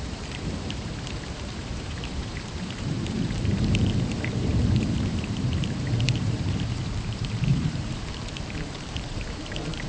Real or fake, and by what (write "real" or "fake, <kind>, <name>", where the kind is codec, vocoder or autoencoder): fake, vocoder, BigVGAN v2